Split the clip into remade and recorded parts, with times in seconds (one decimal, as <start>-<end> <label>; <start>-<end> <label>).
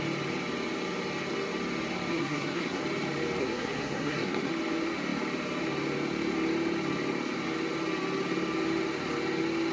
0.0-2.1 recorded; 2.1-2.8 remade; 2.8-3.4 recorded; 3.4-4.5 remade; 4.5-9.7 recorded